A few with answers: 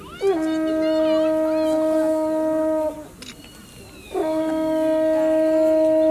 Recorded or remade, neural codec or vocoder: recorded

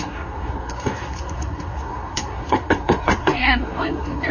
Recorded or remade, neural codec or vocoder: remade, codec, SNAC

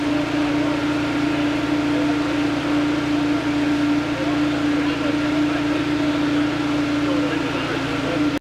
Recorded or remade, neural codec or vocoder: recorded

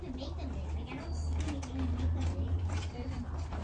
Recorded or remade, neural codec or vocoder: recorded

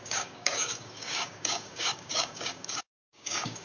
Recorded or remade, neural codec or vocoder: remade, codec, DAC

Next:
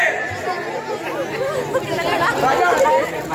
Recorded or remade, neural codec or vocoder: recorded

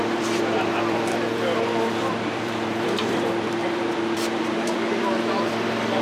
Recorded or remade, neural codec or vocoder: remade, vocoder, BigVGAN v2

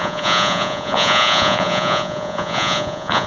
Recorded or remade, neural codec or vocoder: remade, vocoder, Vocos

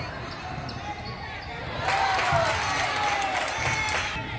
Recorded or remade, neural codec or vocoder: recorded